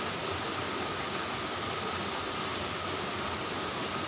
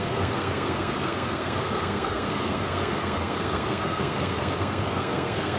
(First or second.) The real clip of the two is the first